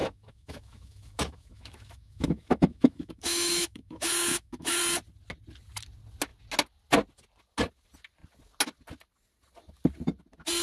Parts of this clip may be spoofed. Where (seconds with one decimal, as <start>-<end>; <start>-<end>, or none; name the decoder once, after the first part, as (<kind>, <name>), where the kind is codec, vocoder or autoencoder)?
0.0-4.8 (autoencoder, DAC-VAE)